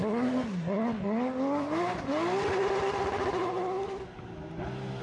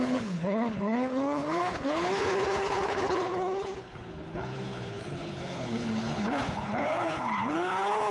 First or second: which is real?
first